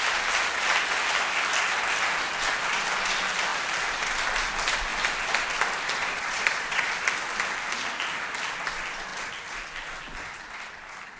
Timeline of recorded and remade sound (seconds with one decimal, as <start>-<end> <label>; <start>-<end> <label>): 0.0-6.0 recorded; 6.0-7.0 remade; 7.0-11.2 recorded